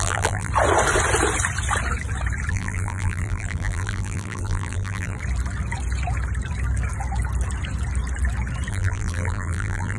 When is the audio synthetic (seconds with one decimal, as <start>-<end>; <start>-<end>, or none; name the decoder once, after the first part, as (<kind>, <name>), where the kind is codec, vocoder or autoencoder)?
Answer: 0.0-0.5 (vocoder, BigVGAN v2); 2.5-5.2; 8.7-10.0